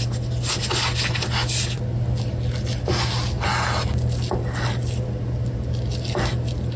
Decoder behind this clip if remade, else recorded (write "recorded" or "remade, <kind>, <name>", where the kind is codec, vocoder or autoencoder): recorded